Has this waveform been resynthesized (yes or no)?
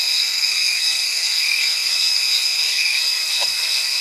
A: yes